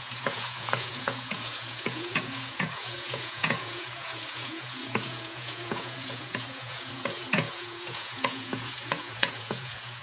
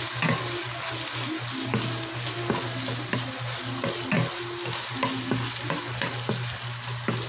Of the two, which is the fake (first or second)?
first